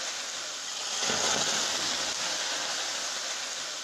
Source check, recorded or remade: recorded